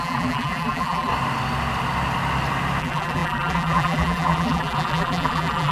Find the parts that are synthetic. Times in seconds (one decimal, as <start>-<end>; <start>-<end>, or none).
0.0-1.1; 2.8-5.7